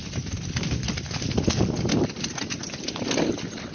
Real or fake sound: real